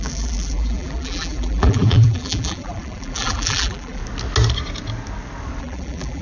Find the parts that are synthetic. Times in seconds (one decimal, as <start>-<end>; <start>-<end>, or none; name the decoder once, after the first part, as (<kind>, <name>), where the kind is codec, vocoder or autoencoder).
0.0-4.0 (vocoder, BigVGAN v2); 5.6-6.2